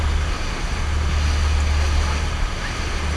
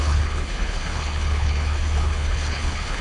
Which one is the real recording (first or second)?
first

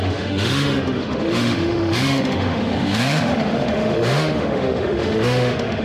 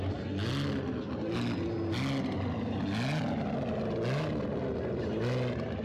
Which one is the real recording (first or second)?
second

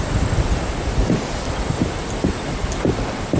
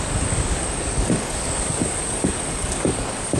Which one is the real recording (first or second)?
first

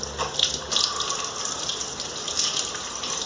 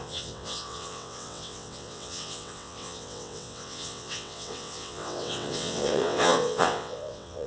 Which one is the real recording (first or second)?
first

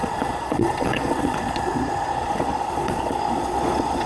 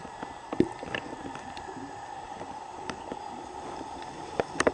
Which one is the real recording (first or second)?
second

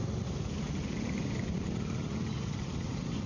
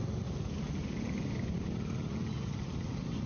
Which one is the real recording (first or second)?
second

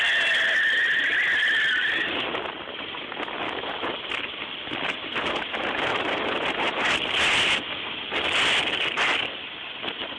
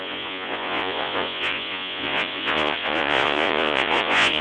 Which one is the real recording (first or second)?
first